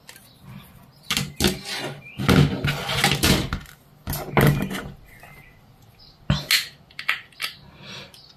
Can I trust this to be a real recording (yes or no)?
yes